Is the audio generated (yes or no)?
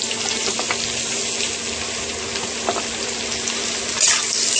no